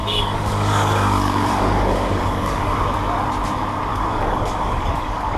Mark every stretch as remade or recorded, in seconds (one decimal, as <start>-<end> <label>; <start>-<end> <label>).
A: 0.0-2.8 remade; 2.8-3.9 recorded; 3.9-5.4 remade